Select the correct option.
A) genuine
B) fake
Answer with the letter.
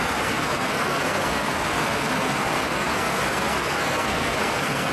B